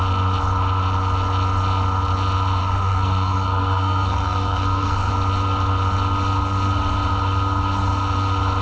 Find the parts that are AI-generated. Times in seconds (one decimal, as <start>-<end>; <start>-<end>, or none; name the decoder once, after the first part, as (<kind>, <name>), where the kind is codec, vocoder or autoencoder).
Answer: 2.6-5.1 (codec, SNAC)